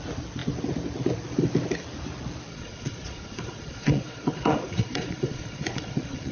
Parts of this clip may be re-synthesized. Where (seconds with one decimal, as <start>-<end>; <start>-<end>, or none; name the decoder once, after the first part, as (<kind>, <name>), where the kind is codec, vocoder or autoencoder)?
2.5-6.3 (vocoder, Vocos)